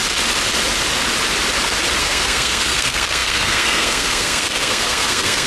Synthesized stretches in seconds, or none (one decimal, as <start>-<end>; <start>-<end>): 2.0-5.5